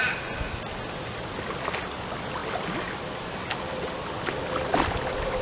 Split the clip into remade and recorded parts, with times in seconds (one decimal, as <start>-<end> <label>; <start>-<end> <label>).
0.0-5.4 recorded